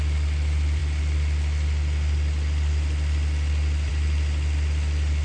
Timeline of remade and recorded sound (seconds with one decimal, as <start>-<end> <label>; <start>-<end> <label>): 0.0-5.2 recorded